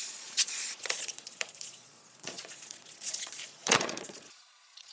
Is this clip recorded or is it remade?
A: remade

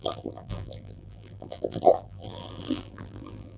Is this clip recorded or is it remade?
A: remade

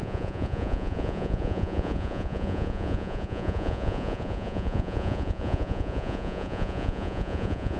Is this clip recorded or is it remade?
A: remade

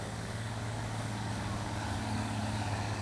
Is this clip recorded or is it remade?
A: remade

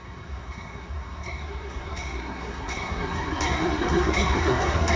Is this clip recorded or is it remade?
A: remade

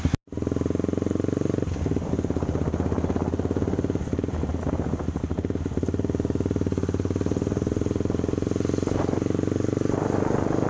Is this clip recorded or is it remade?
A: recorded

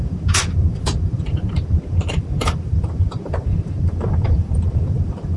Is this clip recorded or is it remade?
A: remade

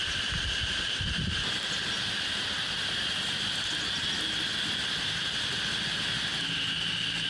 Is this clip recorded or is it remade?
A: recorded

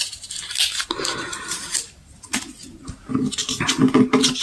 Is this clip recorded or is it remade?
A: recorded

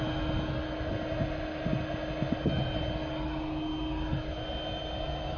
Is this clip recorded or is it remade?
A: recorded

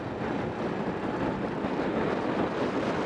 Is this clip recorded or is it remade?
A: recorded